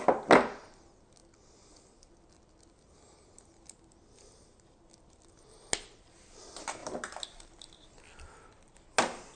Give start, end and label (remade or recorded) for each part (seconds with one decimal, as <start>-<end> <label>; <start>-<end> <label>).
0.0-9.4 recorded